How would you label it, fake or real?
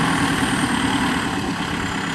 real